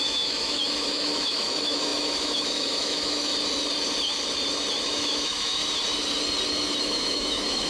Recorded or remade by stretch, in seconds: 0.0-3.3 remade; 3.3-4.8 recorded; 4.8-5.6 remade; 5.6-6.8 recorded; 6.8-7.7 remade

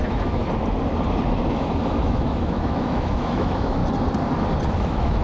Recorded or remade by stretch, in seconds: 0.0-0.4 remade; 0.4-1.5 recorded; 1.5-3.8 remade; 3.8-4.7 recorded; 4.7-5.2 remade

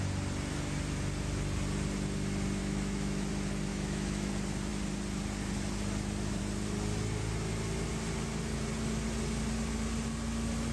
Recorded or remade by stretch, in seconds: 0.0-2.6 recorded; 2.6-3.3 remade; 3.3-3.7 recorded; 3.7-4.3 remade; 4.3-10.7 recorded

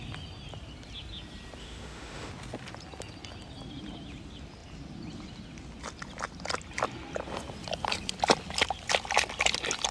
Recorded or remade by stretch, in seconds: 0.0-1.6 recorded; 1.6-2.3 remade; 2.3-9.9 recorded

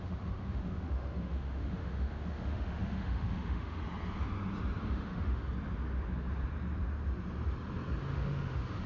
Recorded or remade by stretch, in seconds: 0.0-3.8 remade; 3.8-4.9 recorded; 4.9-5.4 remade; 5.4-8.0 recorded; 8.0-8.9 remade

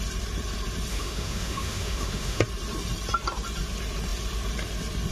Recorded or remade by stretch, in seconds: 0.0-0.9 recorded; 0.9-2.4 remade; 2.4-5.1 recorded